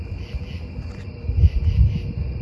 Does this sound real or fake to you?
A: real